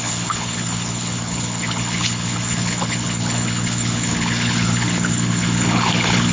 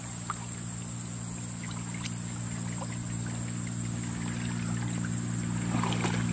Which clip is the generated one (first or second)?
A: first